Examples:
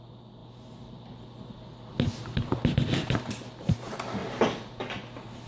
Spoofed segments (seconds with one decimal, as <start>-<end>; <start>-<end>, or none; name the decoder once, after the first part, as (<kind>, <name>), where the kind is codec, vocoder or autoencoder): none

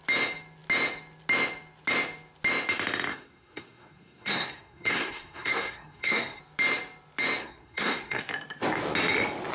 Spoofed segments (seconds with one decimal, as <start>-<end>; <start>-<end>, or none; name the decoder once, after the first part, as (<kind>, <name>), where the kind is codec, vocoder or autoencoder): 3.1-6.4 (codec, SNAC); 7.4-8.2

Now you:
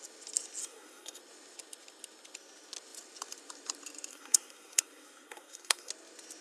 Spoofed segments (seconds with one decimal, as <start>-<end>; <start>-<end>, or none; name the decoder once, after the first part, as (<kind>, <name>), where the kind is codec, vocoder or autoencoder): 0.6-1.2 (codec, SNAC); 4.1-5.9

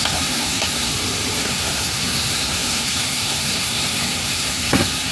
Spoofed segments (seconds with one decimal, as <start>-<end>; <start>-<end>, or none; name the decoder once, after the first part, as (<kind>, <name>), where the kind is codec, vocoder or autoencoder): 0.0-0.9 (codec, SNAC); 1.4-5.1